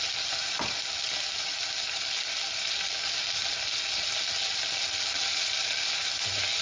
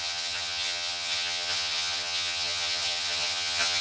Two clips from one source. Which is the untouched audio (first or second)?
first